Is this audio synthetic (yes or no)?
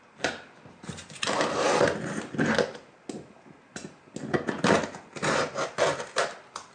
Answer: no